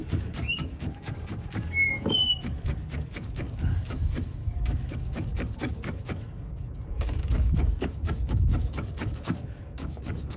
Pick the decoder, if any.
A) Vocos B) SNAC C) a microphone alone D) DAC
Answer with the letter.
D